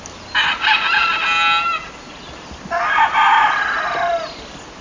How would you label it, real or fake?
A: real